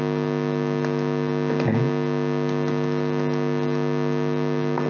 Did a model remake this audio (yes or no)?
no